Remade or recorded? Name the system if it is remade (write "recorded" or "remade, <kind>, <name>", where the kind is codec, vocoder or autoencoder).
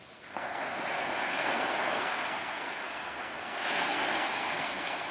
remade, codec, SNAC